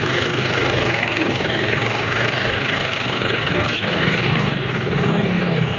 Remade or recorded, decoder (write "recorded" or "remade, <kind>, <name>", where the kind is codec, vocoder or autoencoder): remade, codec, DAC